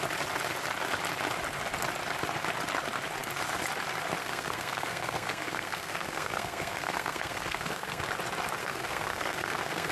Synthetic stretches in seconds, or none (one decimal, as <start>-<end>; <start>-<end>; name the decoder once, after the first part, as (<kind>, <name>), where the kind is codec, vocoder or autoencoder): 4.2-8.0 (codec, SNAC); 8.6-9.9